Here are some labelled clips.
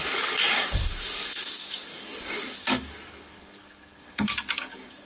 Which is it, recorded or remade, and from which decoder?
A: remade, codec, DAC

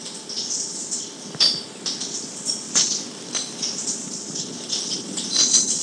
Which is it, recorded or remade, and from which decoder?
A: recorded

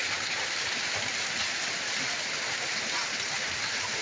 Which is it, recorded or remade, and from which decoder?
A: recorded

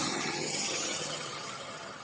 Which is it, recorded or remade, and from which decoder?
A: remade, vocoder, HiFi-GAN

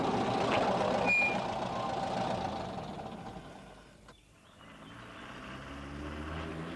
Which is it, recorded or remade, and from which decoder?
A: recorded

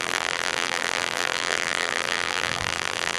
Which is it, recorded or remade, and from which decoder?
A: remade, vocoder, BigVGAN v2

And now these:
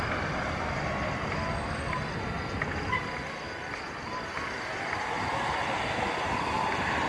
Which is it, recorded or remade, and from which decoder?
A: recorded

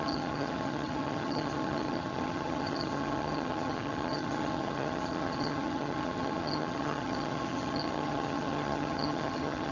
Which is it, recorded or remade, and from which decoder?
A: remade, vocoder, HiFi-GAN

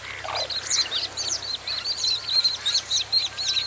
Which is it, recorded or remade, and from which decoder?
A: recorded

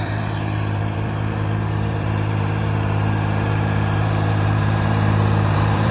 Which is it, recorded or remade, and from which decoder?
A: remade, vocoder, BigVGAN v2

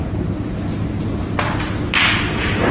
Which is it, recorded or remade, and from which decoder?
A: recorded